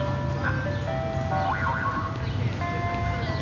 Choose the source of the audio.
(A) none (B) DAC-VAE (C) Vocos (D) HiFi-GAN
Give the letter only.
A